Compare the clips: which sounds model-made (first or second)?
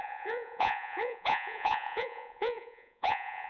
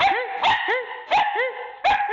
first